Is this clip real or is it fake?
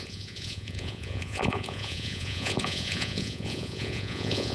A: fake